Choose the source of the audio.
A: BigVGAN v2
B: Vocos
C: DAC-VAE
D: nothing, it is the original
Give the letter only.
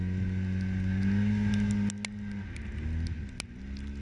D